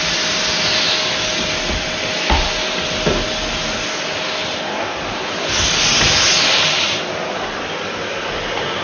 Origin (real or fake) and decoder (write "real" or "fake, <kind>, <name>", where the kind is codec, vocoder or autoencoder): real